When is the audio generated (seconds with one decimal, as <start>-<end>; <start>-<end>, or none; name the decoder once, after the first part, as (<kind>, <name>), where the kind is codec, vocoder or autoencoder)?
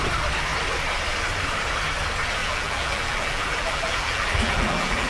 2.4-5.1 (vocoder, BigVGAN v2)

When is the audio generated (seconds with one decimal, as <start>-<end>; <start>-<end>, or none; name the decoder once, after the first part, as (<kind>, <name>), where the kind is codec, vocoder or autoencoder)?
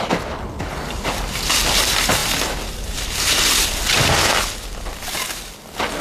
none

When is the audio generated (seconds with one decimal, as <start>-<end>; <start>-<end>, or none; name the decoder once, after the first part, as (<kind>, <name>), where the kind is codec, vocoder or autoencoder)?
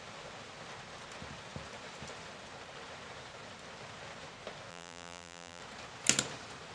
4.7-5.6 (vocoder, BigVGAN v2)